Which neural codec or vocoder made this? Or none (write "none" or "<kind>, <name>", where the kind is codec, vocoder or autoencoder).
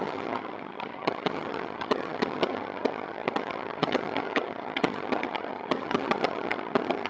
vocoder, HiFi-GAN